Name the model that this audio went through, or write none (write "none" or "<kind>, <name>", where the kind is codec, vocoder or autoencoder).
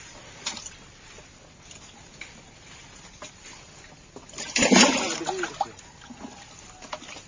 none